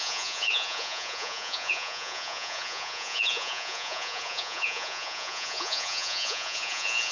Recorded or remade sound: remade